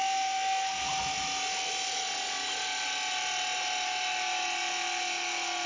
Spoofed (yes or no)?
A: no